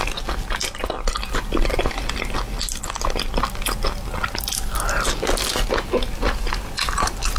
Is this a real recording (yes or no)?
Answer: yes